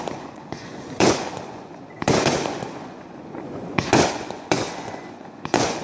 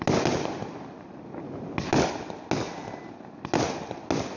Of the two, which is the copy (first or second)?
first